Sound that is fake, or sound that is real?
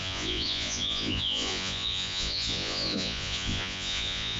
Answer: fake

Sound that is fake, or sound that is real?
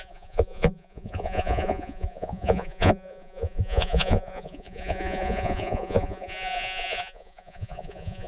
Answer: fake